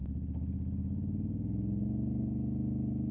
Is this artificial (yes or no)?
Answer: no